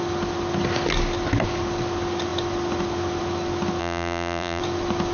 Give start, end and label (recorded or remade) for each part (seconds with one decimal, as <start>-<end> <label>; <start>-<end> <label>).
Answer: 0.0-3.8 recorded; 3.8-4.6 remade; 4.6-5.1 recorded